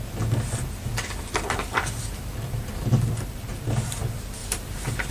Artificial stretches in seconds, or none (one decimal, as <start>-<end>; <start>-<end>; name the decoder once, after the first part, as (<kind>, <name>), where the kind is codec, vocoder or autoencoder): 4.4-5.1 (vocoder, BigVGAN v2)